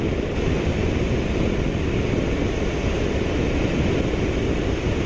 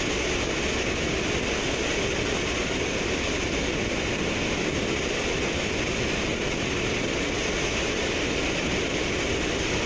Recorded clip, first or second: second